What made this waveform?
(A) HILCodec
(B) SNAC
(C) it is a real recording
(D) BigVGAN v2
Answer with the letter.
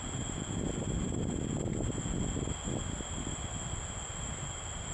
C